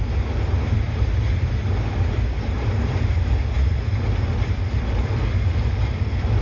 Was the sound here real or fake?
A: real